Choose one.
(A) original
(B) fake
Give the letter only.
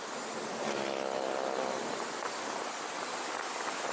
A